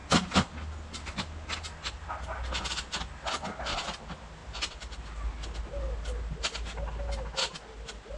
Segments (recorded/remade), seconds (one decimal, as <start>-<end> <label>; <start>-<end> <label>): 0.0-8.2 recorded